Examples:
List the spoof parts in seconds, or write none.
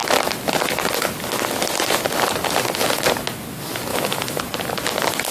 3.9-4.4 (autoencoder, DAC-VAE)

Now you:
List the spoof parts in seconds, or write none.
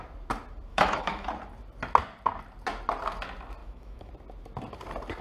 0.7-1.3 (autoencoder, DAC-VAE); 3.6-4.1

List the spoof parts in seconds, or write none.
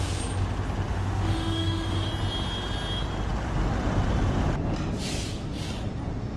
0.9-2.1 (autoencoder, DAC-VAE)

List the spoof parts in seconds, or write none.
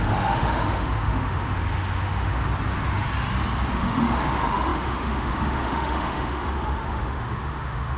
0.0-2.5 (autoencoder, DAC-VAE); 3.7-8.0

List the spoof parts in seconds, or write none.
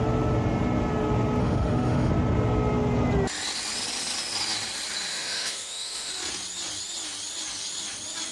1.4-2.1 (autoencoder, DAC-VAE); 5.1-6.1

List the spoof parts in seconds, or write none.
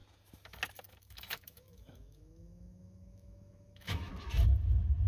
0.8-4.1 (autoencoder, DAC-VAE)